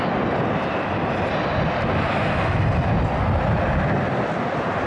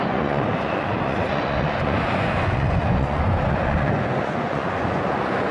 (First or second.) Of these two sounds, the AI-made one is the second